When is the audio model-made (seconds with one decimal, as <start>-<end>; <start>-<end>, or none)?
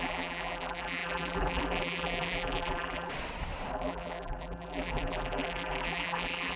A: 0.0-3.1; 3.7-6.6